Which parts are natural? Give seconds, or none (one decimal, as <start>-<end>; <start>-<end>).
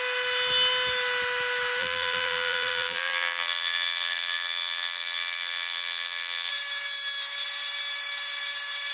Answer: 0.0-1.8; 6.5-8.9